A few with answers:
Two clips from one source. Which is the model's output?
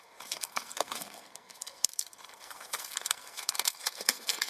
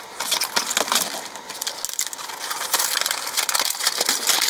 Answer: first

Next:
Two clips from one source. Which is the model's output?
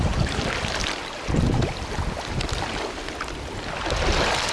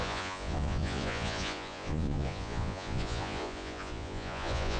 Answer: second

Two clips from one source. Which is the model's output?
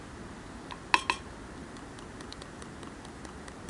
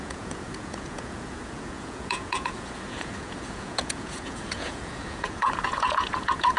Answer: second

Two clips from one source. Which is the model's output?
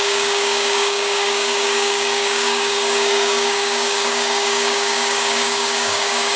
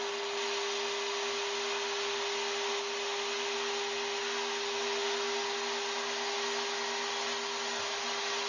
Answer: first